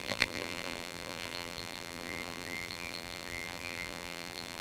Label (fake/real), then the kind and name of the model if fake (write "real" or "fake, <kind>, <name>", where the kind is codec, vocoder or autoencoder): fake, vocoder, BigVGAN v2